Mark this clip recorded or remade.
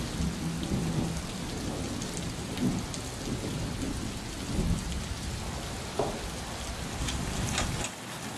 recorded